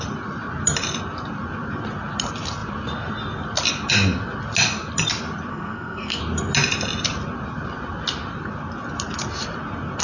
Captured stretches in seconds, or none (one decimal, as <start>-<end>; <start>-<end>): 0.0-5.5; 6.2-10.0